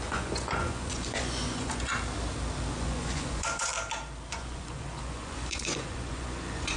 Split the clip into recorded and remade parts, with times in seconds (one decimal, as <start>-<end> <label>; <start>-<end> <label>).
0.0-1.9 remade; 1.9-2.7 recorded; 2.7-3.7 remade; 3.7-4.3 recorded; 4.3-6.8 remade